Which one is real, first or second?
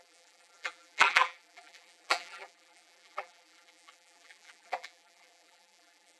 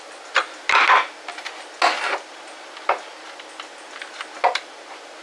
second